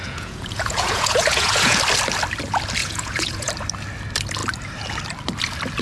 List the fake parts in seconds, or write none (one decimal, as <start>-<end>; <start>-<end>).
0.0-1.8; 2.8-3.5